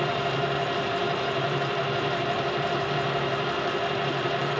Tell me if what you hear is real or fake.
fake